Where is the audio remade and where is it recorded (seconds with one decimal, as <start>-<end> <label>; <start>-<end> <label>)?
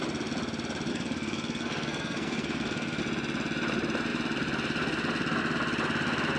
0.0-0.9 recorded; 0.9-3.0 remade; 3.0-6.4 recorded